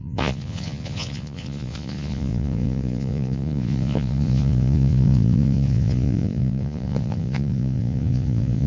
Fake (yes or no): yes